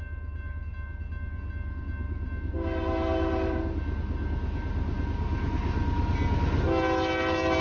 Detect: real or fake real